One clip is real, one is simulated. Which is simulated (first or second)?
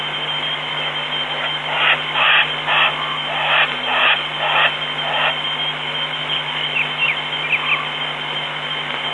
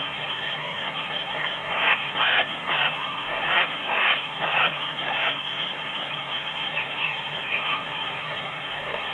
second